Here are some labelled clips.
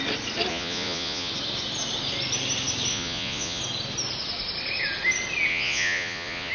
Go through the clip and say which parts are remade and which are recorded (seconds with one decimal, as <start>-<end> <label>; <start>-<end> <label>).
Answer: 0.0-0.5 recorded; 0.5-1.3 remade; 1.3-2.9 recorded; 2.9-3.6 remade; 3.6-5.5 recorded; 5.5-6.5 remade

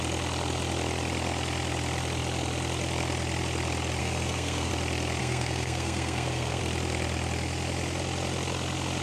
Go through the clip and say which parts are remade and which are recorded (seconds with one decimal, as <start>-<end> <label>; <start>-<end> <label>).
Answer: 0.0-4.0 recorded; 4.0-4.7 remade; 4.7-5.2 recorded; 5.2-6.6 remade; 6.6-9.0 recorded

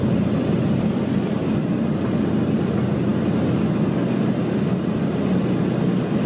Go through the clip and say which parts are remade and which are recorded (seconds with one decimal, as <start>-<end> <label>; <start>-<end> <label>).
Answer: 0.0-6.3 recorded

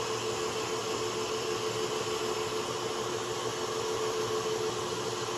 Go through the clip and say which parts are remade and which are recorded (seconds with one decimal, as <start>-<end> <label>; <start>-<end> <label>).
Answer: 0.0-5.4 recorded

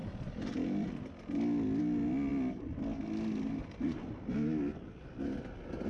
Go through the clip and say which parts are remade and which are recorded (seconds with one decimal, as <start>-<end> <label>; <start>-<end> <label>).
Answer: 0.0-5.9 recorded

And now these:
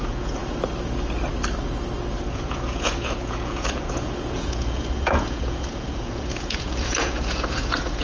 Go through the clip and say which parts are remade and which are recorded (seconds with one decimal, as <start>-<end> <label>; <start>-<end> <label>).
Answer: 0.0-0.4 remade; 0.4-2.3 recorded; 2.3-8.0 remade